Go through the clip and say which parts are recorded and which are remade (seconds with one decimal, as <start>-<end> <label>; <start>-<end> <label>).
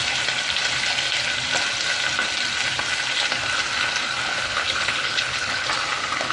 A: 0.0-4.2 recorded; 4.2-5.7 remade; 5.7-6.3 recorded